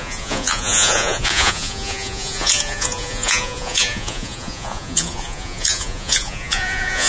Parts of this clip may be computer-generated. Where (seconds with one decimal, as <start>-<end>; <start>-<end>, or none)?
0.0-7.1